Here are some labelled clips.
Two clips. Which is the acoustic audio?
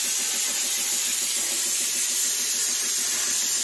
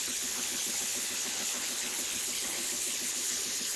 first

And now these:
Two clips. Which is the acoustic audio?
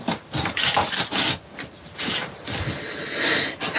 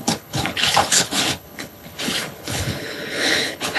first